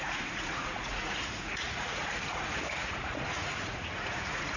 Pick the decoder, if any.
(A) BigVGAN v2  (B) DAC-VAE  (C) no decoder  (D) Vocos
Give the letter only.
D